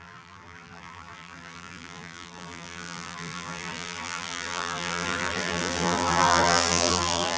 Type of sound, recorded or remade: remade